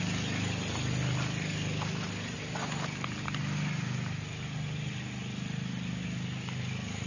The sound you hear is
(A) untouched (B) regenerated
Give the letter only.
A